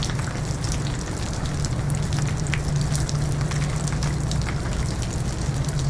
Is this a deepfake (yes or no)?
no